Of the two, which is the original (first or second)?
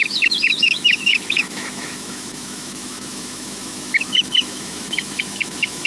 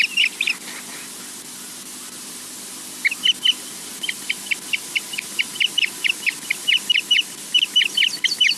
second